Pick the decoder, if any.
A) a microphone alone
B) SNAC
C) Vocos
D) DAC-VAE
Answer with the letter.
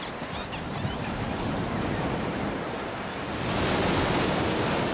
A